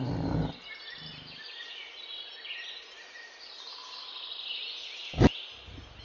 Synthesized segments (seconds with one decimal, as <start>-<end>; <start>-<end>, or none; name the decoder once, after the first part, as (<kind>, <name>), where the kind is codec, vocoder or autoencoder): none